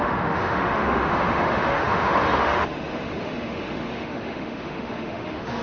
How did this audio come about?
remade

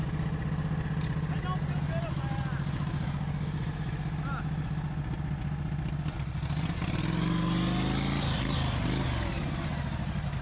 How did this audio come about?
recorded